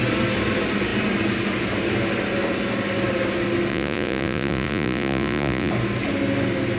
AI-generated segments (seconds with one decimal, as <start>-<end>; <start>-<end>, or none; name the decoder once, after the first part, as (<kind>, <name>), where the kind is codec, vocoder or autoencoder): 3.7-5.7 (vocoder, Vocos)

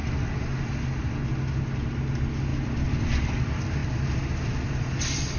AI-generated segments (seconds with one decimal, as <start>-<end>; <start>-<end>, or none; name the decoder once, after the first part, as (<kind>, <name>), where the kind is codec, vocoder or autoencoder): none

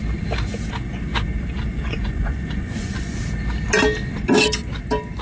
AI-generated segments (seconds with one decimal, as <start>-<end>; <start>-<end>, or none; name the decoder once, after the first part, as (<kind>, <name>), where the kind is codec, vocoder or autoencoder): 1.7-3.2 (vocoder, Vocos)

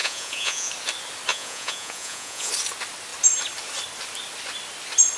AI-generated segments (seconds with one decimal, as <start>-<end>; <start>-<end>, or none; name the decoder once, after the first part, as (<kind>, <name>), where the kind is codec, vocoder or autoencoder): 0.0-0.7 (vocoder, Vocos); 1.3-2.5

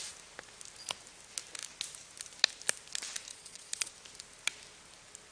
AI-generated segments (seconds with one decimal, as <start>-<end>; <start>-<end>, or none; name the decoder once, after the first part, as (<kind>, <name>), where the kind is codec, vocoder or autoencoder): 3.3-3.9 (vocoder, Vocos)

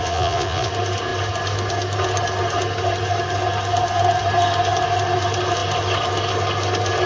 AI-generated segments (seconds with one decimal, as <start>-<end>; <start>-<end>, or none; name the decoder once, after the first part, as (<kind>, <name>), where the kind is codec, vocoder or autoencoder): 0.0-0.7 (vocoder, Vocos)

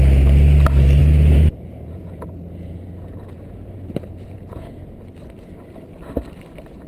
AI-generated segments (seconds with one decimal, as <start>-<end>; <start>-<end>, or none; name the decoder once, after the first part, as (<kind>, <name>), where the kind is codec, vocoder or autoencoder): 1.0-5.1 (vocoder, Vocos)

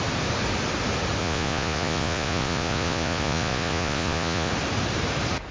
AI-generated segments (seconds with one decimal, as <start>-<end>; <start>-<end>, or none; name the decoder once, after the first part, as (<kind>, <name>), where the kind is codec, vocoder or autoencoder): 1.2-4.5 (vocoder, Vocos)